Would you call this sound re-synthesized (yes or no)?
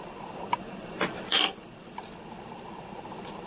yes